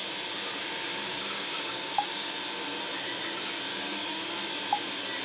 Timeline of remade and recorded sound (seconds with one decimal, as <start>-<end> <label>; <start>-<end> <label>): 0.0-1.0 recorded; 1.0-2.3 remade; 2.3-3.7 recorded; 3.7-4.3 remade; 4.3-5.2 recorded